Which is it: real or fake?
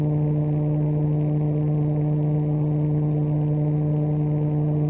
real